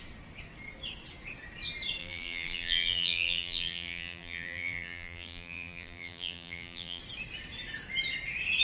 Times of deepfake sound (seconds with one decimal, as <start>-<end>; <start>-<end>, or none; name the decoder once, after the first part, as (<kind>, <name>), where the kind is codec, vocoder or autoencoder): 2.0-7.0 (vocoder, BigVGAN v2)